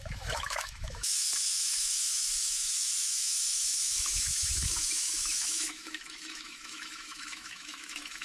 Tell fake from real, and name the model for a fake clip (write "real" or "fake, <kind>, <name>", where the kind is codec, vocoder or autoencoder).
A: fake, autoencoder, DAC-VAE